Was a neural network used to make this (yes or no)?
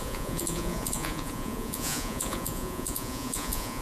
yes